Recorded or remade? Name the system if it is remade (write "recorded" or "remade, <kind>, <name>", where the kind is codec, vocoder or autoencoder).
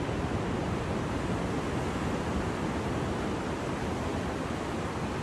recorded